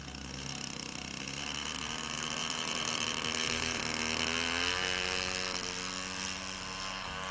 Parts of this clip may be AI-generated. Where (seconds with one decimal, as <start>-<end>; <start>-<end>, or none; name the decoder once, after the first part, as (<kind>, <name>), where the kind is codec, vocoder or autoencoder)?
2.4-3.8 (vocoder, BigVGAN v2)